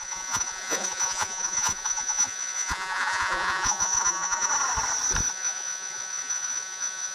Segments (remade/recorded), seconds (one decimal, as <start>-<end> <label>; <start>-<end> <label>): 0.0-4.5 remade; 4.5-5.3 recorded; 5.3-7.1 remade